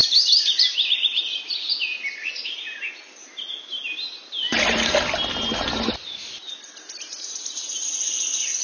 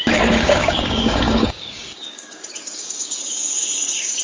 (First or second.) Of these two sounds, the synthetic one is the second